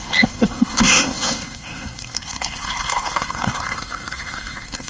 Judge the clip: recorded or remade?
remade